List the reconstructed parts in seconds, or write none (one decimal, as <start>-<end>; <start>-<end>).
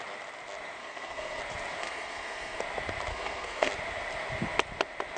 0.8-1.4; 1.8-2.6; 3.1-3.7